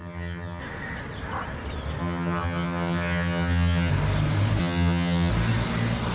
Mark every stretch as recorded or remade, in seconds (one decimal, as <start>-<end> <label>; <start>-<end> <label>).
0.0-0.6 remade; 0.6-2.0 recorded; 2.0-3.9 remade; 3.9-4.6 recorded; 4.6-5.3 remade; 5.3-6.1 recorded